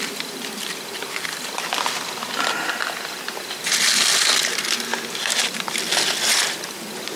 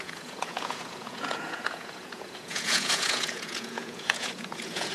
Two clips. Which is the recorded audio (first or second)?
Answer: first